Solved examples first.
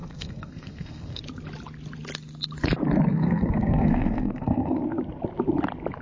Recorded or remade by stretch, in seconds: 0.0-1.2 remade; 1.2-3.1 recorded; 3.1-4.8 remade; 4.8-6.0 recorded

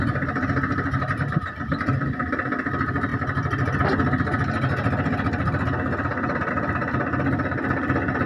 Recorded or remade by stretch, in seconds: 0.0-8.3 recorded